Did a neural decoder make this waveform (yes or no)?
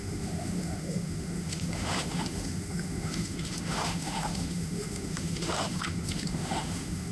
yes